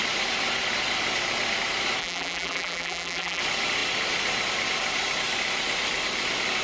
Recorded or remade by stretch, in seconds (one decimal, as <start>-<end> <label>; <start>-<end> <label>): 0.0-2.0 recorded; 2.0-3.4 remade; 3.4-6.6 recorded